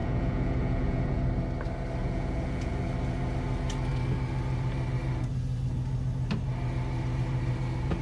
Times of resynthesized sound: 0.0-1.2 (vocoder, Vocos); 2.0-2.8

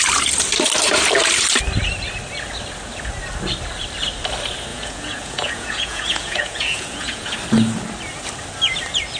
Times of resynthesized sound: 4.7-7.3 (vocoder, Vocos)

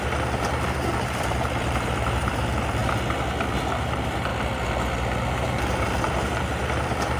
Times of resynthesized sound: 0.0-2.8 (vocoder, BigVGAN v2); 3.8-4.3; 5.3-7.2